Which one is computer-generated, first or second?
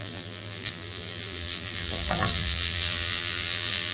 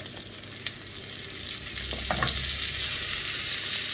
first